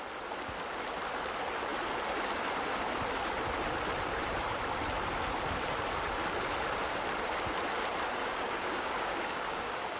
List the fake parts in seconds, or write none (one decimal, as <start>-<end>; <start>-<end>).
8.2-10.0